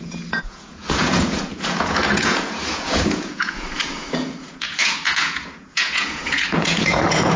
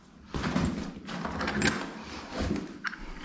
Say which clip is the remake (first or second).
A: first